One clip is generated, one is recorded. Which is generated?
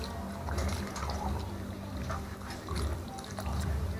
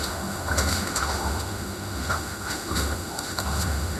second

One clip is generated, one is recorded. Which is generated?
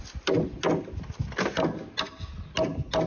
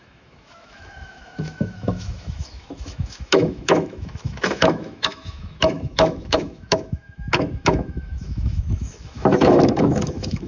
second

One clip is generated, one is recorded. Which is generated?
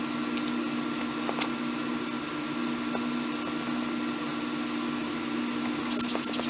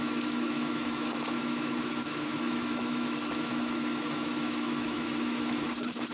second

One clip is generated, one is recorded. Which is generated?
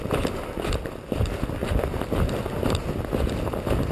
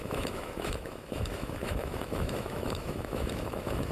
second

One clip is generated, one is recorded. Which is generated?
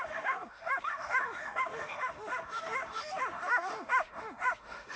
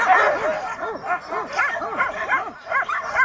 first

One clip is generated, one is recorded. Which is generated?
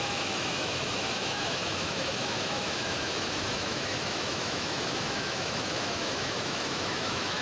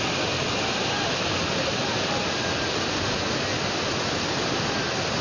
first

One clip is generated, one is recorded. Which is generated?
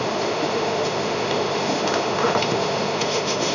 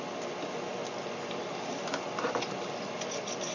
first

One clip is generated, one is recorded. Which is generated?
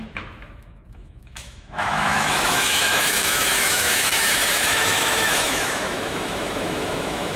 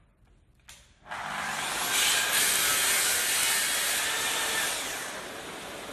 first